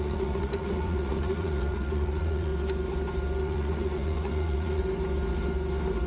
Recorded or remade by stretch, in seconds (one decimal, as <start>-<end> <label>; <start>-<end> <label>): 0.0-2.5 remade; 2.5-3.4 recorded; 3.4-4.8 remade; 4.8-6.1 recorded